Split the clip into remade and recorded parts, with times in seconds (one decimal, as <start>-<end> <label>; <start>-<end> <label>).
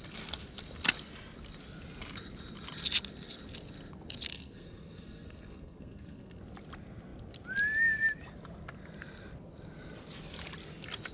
0.0-4.3 recorded; 4.3-6.4 remade; 6.4-11.1 recorded